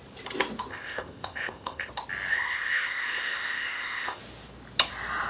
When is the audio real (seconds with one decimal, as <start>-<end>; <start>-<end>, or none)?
0.0-0.7; 1.9-2.3; 4.2-5.3